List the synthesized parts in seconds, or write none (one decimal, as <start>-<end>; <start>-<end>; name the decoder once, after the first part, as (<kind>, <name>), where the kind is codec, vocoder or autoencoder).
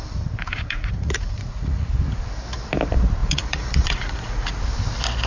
0.4-1.9 (vocoder, Vocos); 3.2-4.6